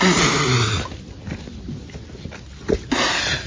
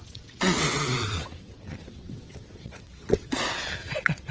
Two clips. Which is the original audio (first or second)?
first